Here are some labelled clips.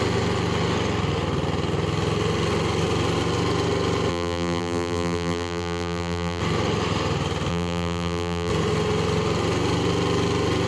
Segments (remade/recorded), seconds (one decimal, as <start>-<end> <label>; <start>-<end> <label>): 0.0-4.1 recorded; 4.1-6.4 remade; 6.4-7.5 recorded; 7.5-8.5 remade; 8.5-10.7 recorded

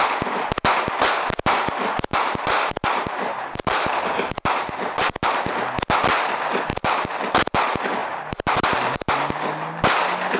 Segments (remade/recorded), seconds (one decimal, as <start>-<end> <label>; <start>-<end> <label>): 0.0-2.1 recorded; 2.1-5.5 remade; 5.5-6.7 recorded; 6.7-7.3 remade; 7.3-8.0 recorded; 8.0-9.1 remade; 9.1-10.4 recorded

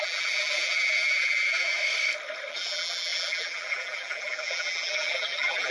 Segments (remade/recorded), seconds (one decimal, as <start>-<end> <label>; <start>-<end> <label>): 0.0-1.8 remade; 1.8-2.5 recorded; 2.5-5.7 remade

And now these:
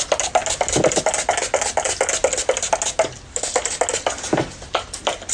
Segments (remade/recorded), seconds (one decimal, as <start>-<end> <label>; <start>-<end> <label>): 0.0-5.3 recorded

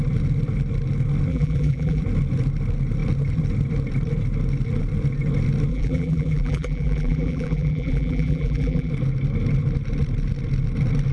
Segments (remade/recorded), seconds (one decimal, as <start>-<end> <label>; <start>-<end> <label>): 0.0-1.3 recorded; 1.3-2.0 remade; 2.0-5.7 recorded; 5.7-8.9 remade; 8.9-11.1 recorded

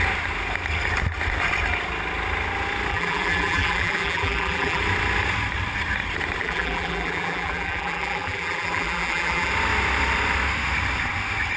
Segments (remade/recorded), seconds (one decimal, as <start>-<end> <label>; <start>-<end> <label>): 0.0-2.9 recorded; 2.9-4.8 remade; 4.8-6.4 recorded; 6.4-9.5 remade; 9.5-11.6 recorded

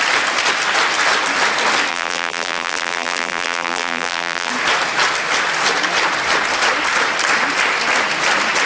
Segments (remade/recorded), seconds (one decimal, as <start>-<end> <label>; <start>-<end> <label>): 0.0-1.9 recorded; 1.9-4.5 remade; 4.5-8.7 recorded